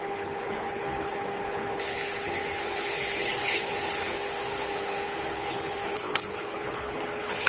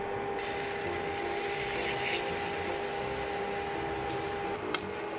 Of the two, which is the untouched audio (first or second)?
second